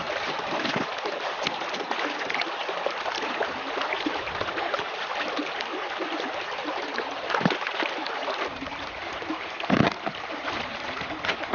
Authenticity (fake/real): real